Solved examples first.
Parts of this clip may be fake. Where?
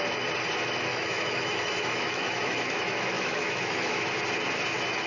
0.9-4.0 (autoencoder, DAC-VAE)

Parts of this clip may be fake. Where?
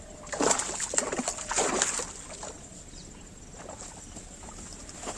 none